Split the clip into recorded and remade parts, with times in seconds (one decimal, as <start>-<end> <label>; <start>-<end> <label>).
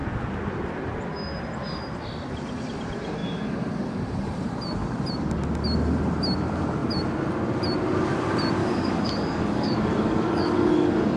0.0-8.6 recorded; 8.6-11.2 remade